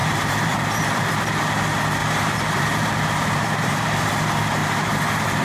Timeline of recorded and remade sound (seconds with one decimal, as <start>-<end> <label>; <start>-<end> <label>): 0.0-1.3 remade; 1.3-2.0 recorded; 2.0-4.1 remade; 4.1-4.6 recorded; 4.6-5.4 remade